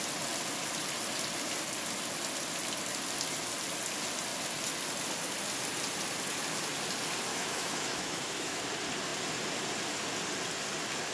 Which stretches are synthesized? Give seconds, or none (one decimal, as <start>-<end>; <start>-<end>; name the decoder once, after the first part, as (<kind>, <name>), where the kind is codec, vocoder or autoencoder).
7.3-8.6 (autoencoder, DAC-VAE)